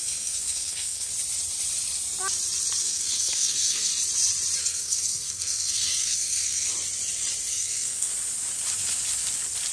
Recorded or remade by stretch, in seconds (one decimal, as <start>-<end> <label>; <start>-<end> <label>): 0.0-1.1 remade; 1.1-2.8 recorded; 2.8-3.9 remade; 3.9-4.6 recorded; 4.6-6.7 remade; 6.7-7.5 recorded; 7.5-8.1 remade; 8.1-9.7 recorded